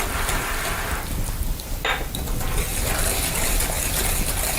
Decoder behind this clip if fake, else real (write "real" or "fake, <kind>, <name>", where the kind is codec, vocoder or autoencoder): real